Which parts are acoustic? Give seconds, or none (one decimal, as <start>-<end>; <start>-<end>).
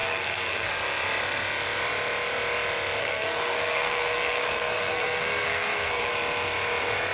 0.7-3.0; 6.1-7.1